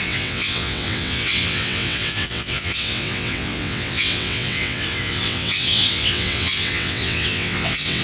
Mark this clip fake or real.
fake